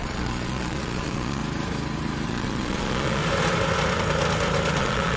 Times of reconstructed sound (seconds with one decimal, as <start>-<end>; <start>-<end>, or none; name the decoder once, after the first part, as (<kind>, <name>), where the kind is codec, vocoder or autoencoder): 0.0-1.4 (vocoder, Vocos); 2.3-3.2; 4.8-5.2